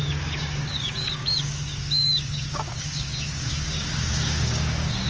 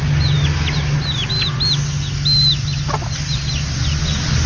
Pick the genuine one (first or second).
second